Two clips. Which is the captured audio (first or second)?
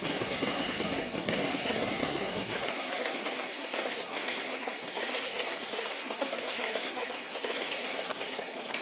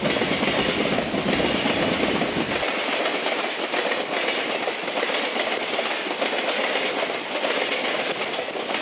second